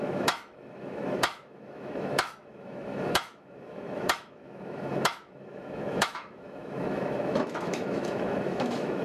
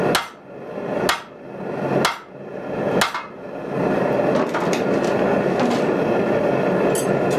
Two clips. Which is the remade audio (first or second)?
first